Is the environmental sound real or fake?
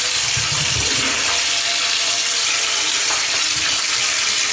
fake